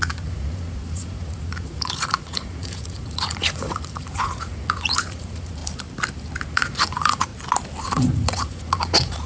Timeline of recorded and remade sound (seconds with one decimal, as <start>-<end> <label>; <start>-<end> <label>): 0.0-5.6 remade; 5.6-6.4 recorded; 6.4-7.3 remade; 7.3-7.8 recorded; 7.8-9.3 remade